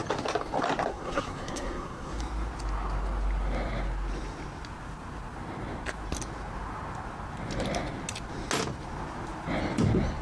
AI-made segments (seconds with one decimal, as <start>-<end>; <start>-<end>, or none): 0.9-2.2